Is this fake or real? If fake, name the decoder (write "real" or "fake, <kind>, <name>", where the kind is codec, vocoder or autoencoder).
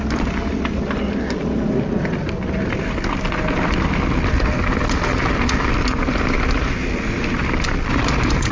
real